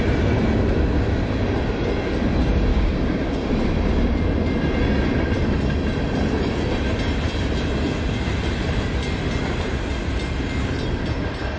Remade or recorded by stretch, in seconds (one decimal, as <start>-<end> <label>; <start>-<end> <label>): 0.0-2.7 recorded; 2.7-3.5 remade; 3.5-11.6 recorded